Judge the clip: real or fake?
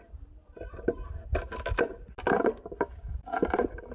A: real